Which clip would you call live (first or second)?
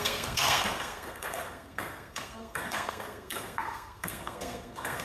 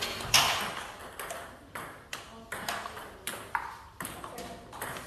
second